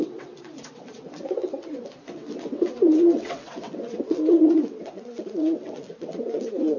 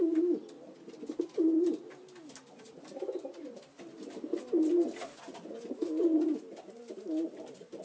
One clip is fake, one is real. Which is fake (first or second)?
first